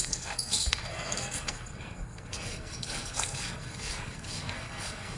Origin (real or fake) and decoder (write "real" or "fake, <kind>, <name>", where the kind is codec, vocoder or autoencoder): fake, codec, SNAC